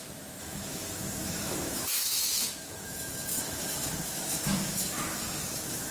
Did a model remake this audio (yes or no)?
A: yes